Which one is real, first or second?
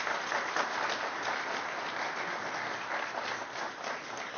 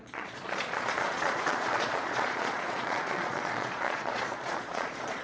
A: first